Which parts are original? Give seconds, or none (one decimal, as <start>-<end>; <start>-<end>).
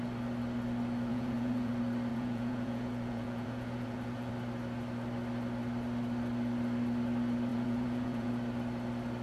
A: 0.0-1.1; 1.7-2.1; 4.3-7.5; 8.3-9.2